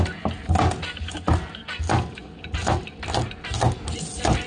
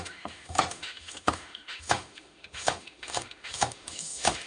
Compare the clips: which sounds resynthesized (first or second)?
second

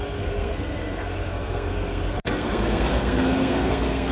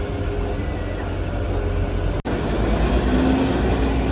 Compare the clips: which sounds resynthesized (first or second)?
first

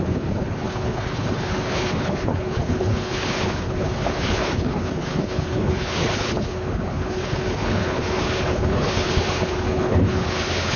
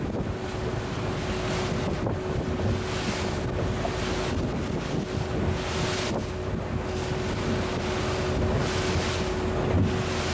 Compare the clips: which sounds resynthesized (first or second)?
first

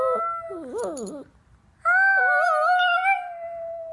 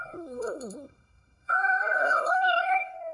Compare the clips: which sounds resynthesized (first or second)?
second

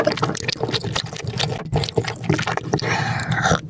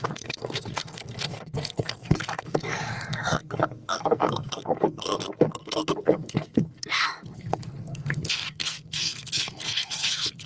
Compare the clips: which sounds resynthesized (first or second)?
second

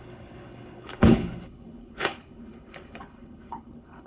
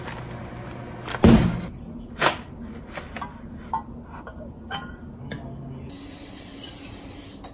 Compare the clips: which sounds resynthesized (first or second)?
first